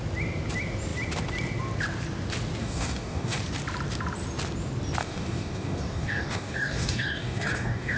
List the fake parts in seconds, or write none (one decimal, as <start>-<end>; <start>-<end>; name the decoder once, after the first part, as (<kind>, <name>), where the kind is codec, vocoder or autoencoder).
2.6-3.4 (codec, DAC); 5.0-8.0

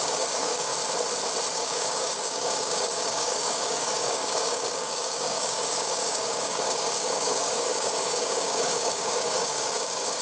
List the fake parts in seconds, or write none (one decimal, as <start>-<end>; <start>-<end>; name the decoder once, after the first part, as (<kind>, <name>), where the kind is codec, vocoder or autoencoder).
0.0-0.7 (codec, DAC); 1.5-10.2